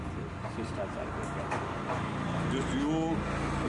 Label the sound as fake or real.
real